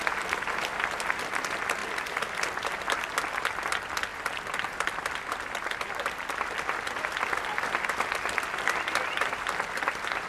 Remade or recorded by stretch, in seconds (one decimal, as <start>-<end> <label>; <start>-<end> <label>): 0.0-10.3 recorded